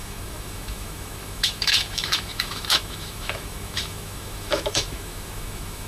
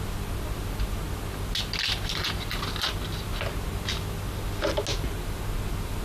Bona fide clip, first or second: second